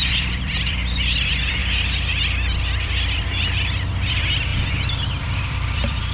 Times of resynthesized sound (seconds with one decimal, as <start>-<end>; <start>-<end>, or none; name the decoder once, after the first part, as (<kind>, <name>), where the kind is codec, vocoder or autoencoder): 0.0-4.5 (vocoder, BigVGAN v2); 5.2-6.1